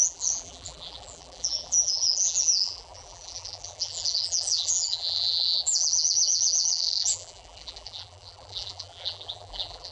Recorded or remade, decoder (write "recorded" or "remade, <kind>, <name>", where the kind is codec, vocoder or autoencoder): remade, vocoder, BigVGAN v2